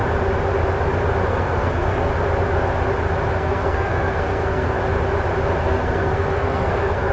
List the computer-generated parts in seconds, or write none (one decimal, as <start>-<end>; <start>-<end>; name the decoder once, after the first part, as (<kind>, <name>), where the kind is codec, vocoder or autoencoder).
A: 1.3-2.1 (codec, SNAC); 3.3-4.8; 5.6-7.1